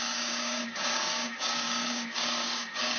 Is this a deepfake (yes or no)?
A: yes